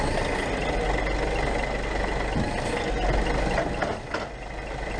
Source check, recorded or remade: recorded